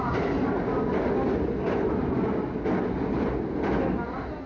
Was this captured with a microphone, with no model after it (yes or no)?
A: yes